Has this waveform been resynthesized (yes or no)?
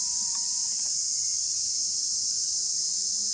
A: no